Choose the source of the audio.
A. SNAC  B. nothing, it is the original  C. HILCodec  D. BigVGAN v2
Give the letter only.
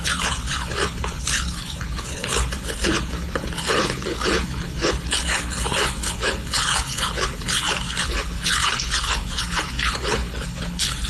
C